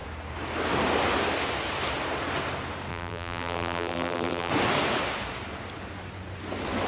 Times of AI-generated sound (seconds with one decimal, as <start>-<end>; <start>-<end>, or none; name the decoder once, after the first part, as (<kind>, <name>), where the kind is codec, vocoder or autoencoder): 2.9-4.5 (vocoder, BigVGAN v2)